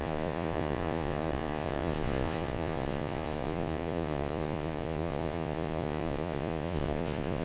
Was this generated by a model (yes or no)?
yes